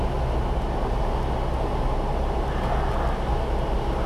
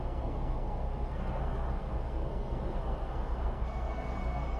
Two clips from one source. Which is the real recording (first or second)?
first